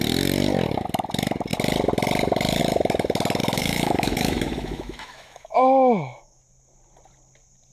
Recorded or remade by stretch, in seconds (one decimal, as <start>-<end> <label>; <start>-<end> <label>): 0.0-3.4 recorded; 3.4-6.4 remade; 6.4-7.7 recorded